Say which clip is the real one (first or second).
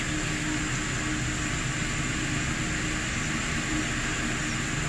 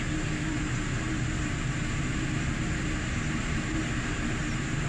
first